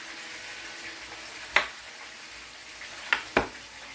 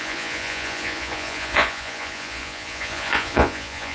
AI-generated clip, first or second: second